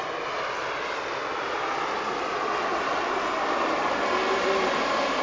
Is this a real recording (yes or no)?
yes